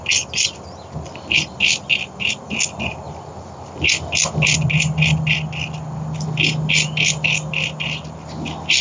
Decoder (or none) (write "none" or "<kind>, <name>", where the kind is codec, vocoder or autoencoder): none